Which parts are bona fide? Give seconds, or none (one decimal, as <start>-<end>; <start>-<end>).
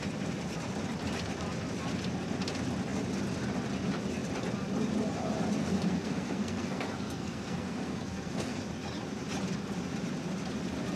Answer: 0.0-5.6; 8.6-11.0